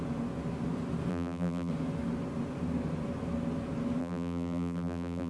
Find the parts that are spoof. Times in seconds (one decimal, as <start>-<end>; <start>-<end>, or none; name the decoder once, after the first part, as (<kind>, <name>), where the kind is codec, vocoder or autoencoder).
1.1-1.7 (vocoder, BigVGAN v2); 4.0-5.3